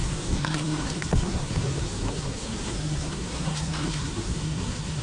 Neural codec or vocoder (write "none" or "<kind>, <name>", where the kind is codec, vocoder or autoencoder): codec, SNAC